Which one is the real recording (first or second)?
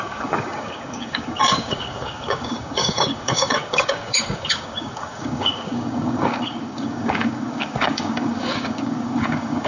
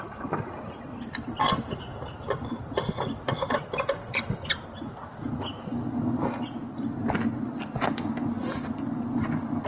second